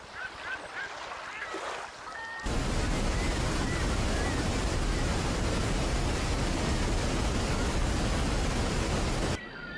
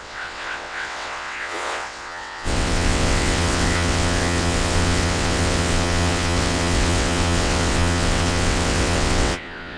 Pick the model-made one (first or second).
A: second